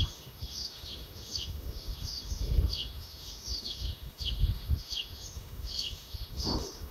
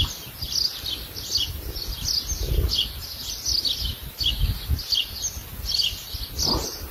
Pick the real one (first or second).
second